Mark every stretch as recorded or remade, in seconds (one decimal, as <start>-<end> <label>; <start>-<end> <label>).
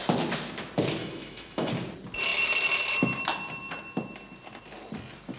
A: 0.0-1.0 recorded; 1.0-1.7 remade; 1.7-5.4 recorded